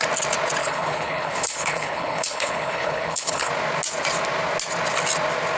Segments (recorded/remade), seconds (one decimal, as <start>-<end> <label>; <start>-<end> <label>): 0.0-0.6 recorded; 0.6-3.5 remade; 3.5-5.6 recorded